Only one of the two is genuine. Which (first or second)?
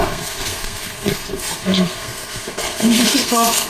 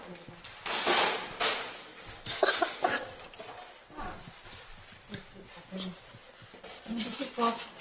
second